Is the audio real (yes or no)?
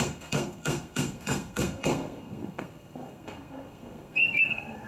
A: no